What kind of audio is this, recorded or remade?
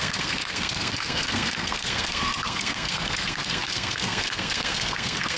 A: remade